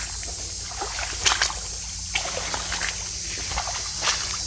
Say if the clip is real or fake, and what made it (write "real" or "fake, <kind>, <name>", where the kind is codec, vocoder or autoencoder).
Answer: real